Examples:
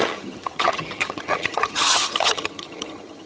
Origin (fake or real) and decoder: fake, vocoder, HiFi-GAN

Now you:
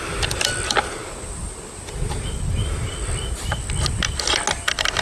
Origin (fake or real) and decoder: real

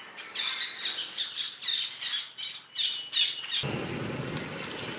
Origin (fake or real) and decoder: real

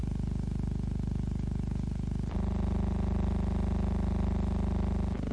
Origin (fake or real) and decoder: real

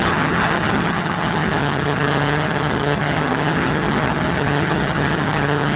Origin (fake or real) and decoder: fake, vocoder, HiFi-GAN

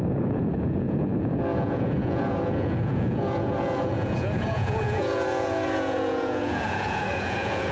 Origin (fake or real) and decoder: fake, vocoder, Vocos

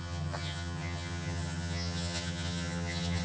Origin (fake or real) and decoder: fake, vocoder, HiFi-GAN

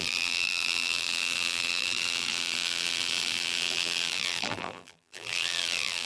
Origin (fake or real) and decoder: fake, vocoder, BigVGAN v2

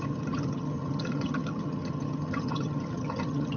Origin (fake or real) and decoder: fake, vocoder, HiFi-GAN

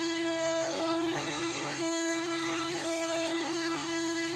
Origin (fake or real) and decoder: fake, codec, SNAC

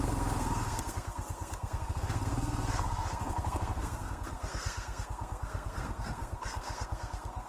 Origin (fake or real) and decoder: fake, codec, SNAC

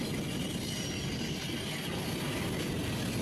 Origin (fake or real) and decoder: real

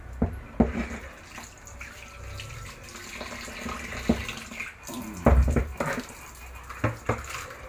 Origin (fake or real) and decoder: real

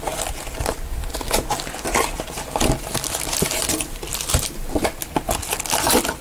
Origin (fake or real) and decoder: real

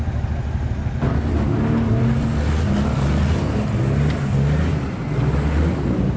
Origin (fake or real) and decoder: real